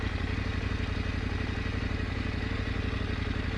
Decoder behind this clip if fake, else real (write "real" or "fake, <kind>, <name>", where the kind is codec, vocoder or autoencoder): real